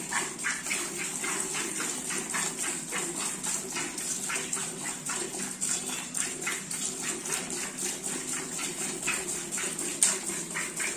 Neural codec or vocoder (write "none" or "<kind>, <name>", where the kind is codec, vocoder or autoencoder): none